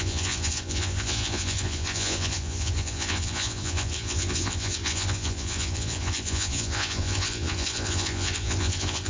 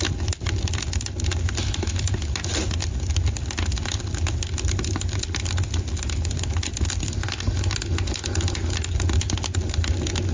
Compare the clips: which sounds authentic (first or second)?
second